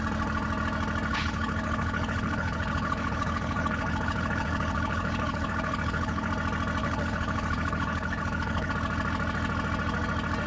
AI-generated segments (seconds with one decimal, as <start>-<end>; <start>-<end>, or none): 1.1-6.3; 6.8-8.7